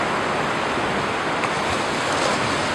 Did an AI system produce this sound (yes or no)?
no